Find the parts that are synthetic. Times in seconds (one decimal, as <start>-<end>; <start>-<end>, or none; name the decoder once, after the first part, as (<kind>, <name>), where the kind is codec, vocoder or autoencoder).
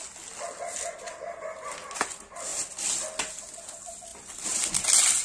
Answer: none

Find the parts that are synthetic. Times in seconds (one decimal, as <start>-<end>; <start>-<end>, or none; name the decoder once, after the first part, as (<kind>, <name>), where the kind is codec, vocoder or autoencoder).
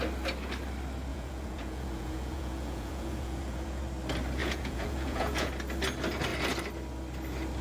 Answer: 1.1-3.8 (vocoder, Vocos); 4.4-5.5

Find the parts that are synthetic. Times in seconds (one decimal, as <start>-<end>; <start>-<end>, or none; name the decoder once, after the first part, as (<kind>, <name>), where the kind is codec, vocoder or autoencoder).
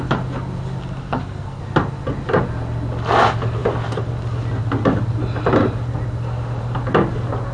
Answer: 1.0-1.6 (codec, SNAC)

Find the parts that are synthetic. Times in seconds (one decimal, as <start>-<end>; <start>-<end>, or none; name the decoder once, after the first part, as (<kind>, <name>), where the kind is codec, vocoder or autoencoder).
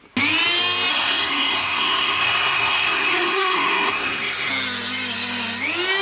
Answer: 0.9-4.5 (codec, SNAC)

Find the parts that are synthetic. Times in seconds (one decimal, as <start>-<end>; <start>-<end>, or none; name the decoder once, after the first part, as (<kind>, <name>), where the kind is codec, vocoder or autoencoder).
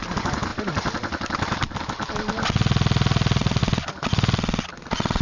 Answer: none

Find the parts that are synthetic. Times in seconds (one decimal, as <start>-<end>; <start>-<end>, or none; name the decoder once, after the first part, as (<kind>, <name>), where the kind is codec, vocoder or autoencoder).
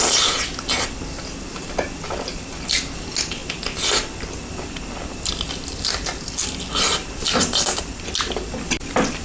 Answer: none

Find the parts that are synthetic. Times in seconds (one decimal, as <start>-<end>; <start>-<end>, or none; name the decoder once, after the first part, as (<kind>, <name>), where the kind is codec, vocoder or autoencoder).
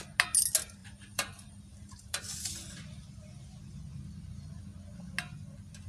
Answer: 0.8-2.2 (vocoder, BigVGAN v2)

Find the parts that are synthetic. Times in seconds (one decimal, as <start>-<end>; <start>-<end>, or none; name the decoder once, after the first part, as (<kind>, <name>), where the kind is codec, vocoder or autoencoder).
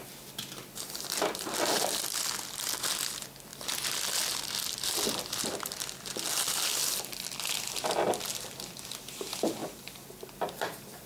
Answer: none